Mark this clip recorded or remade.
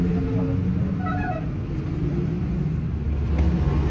recorded